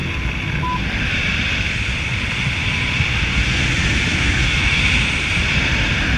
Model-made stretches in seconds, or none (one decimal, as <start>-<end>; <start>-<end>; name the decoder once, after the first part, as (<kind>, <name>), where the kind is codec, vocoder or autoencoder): 4.1-4.8 (autoencoder, DAC-VAE)